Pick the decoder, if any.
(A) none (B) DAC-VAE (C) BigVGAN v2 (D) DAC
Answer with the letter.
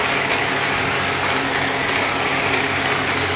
A